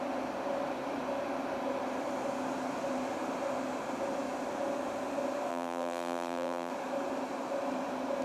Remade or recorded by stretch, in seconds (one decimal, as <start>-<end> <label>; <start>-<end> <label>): 0.0-5.5 recorded; 5.5-6.7 remade; 6.7-8.2 recorded